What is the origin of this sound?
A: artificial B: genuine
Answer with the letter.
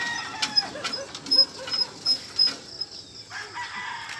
B